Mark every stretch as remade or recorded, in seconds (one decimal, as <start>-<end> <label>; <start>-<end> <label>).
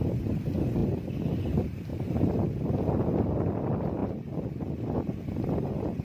0.0-1.9 recorded; 1.9-2.4 remade; 2.4-4.0 recorded; 4.0-6.0 remade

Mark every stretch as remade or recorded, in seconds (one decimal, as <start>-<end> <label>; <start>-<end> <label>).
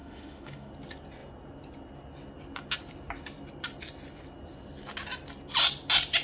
0.0-0.7 remade; 0.7-6.2 recorded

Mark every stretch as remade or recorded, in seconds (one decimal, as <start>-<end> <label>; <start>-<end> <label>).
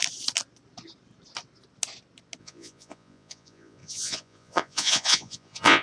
0.0-2.4 recorded; 2.4-5.8 remade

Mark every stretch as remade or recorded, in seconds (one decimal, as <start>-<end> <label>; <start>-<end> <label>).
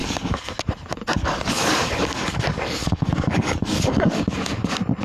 0.0-0.5 remade; 0.5-1.2 recorded; 1.2-4.2 remade; 4.2-5.0 recorded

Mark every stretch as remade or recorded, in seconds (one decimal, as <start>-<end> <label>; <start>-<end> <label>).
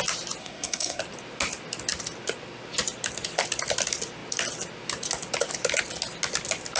0.0-0.4 recorded; 0.4-1.0 remade; 1.0-6.8 recorded